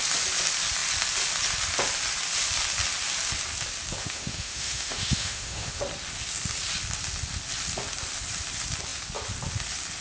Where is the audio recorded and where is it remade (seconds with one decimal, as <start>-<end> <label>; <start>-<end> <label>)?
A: 0.0-4.0 recorded; 4.0-5.8 remade; 5.8-10.0 recorded